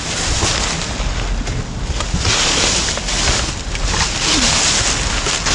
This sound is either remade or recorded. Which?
recorded